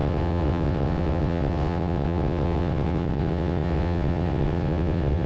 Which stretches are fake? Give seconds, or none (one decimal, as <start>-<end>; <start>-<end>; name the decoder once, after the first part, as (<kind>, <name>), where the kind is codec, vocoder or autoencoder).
0.0-5.3 (vocoder, WaveNeXt)